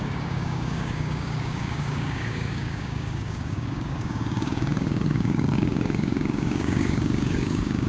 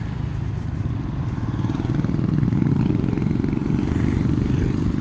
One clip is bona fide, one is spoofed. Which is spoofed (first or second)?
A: first